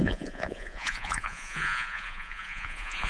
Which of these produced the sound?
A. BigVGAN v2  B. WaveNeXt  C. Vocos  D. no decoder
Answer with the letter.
C